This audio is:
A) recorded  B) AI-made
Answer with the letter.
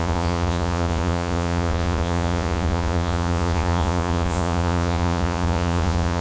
B